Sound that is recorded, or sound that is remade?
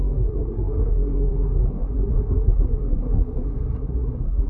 remade